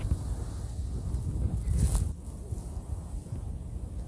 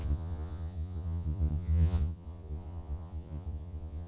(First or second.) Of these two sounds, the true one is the first